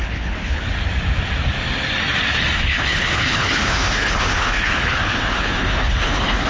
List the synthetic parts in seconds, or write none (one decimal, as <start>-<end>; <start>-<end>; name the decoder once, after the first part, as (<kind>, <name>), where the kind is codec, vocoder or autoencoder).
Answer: 0.0-0.6 (codec, HILCodec); 2.6-6.5